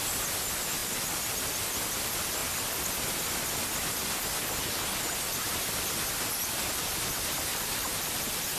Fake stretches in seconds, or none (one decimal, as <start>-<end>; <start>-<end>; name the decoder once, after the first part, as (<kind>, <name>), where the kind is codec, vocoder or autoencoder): 0.8-1.3 (vocoder, BigVGAN v2); 7.5-8.2